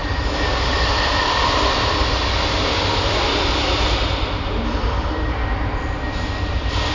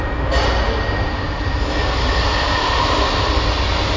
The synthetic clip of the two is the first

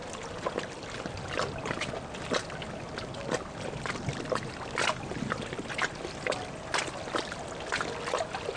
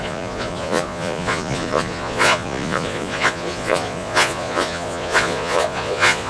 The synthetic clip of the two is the second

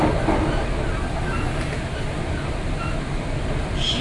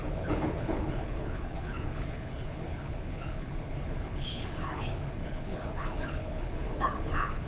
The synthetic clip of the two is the second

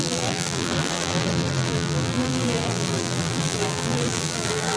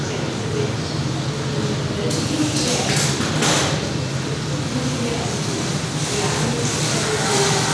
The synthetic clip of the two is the first